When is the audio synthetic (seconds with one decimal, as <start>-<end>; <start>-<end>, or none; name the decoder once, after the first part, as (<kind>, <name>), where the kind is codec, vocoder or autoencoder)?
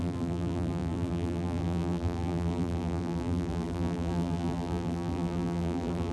0.0-6.1 (vocoder, BigVGAN v2)